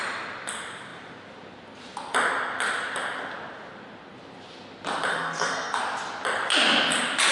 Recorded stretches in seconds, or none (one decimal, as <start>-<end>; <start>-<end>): 0.0-5.1; 5.8-7.3